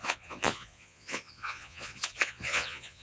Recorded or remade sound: remade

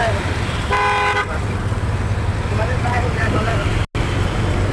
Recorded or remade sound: recorded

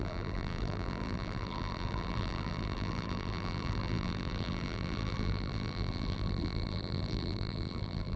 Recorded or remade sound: remade